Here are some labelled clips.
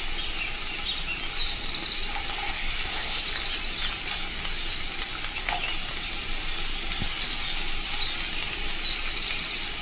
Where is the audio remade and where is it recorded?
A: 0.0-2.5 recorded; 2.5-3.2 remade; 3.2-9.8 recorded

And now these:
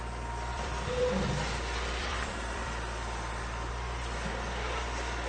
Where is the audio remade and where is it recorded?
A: 0.0-0.5 recorded; 0.5-3.7 remade; 3.7-5.3 recorded

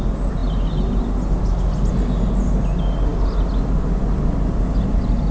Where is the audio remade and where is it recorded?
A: 0.0-5.3 recorded

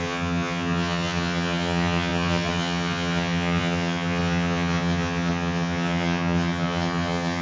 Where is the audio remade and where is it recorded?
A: 0.0-7.4 remade